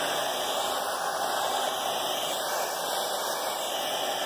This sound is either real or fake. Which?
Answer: real